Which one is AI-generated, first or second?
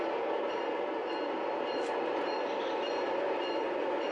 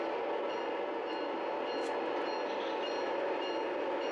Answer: first